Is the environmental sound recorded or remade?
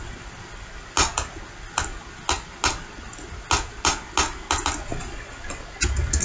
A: recorded